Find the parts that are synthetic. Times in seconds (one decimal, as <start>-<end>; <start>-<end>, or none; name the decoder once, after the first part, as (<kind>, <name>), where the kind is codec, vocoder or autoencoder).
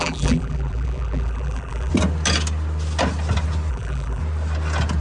0.0-1.9 (vocoder, BigVGAN v2); 3.7-4.2